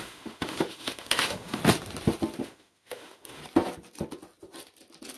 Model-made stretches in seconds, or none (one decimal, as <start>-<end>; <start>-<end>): 0.0-1.6; 2.4-3.4